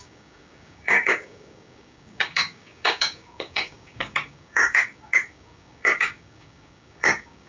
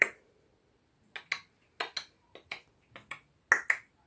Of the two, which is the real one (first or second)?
second